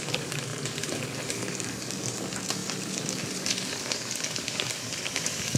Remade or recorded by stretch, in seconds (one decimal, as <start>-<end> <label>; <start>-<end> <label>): 0.0-5.6 remade